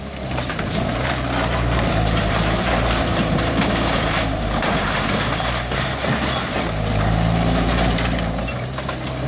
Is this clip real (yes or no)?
no